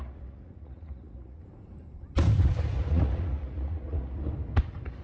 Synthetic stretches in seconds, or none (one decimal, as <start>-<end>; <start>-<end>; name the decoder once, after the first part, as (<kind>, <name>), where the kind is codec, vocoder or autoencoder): 0.0-1.4 (vocoder, Vocos); 2.9-4.3